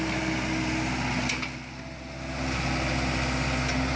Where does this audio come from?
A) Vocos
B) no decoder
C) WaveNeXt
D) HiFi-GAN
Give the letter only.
B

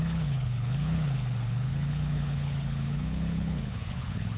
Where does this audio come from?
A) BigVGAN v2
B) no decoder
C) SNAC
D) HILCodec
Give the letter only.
D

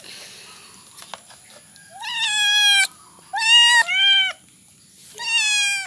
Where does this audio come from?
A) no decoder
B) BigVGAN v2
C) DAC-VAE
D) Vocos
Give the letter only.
A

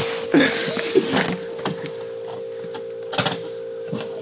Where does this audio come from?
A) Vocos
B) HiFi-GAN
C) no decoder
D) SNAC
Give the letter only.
C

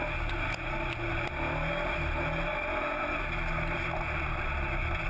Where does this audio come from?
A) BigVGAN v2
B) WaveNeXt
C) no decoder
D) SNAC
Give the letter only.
C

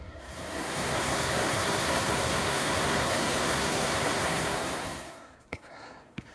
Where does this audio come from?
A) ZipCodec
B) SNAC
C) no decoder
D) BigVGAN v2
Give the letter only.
B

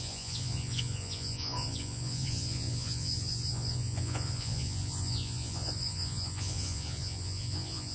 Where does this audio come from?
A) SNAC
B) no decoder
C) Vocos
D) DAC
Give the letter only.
C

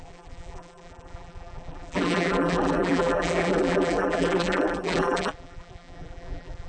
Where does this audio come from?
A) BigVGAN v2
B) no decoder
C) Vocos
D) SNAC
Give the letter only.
A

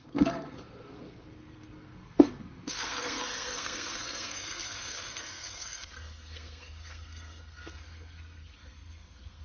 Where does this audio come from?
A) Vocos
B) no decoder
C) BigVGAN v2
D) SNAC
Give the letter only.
D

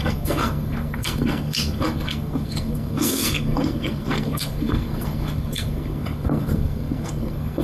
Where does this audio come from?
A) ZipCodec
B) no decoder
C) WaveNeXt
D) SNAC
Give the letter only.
D